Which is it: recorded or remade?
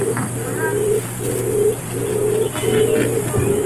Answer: recorded